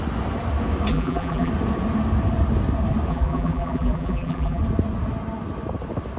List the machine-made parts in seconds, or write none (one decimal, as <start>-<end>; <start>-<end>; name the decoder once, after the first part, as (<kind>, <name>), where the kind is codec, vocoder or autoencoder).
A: 0.9-1.5 (vocoder, BigVGAN v2); 3.1-4.6